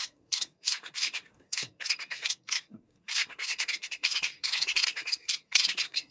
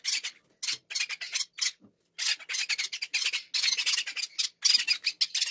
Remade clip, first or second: first